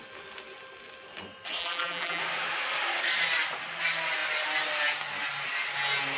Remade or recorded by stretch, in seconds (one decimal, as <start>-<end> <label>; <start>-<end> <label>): 0.0-1.6 recorded; 1.6-2.2 remade; 2.2-6.2 recorded